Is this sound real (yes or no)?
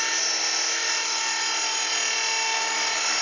yes